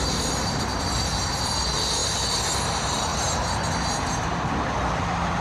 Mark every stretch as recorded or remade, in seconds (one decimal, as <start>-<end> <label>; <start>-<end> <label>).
0.0-3.1 recorded; 3.1-3.7 remade; 3.7-5.4 recorded